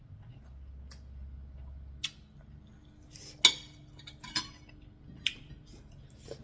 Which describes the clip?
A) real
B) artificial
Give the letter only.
A